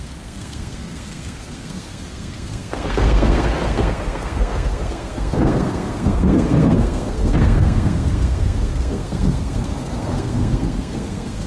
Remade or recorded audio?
remade